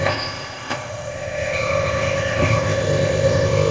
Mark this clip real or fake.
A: fake